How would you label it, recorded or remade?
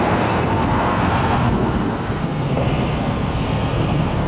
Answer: remade